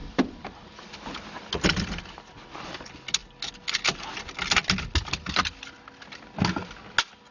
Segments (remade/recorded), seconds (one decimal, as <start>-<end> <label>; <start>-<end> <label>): 0.0-2.0 remade; 2.0-7.3 recorded